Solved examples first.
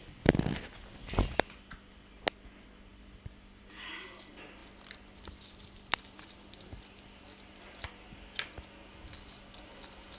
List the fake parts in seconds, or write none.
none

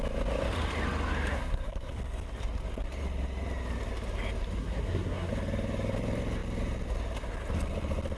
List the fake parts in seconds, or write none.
1.3-1.9 (codec, SNAC); 4.6-5.3

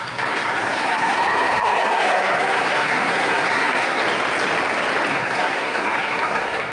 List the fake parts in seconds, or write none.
0.0-4.0 (codec, SNAC); 5.1-6.7

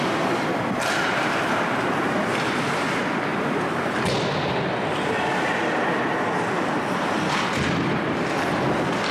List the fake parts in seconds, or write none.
none